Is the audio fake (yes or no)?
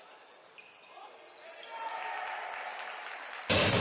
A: no